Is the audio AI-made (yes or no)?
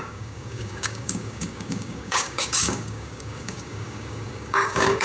yes